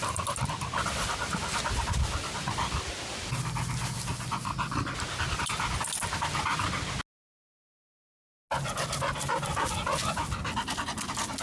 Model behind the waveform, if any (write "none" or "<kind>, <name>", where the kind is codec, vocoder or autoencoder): none